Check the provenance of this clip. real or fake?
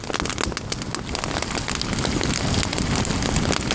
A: real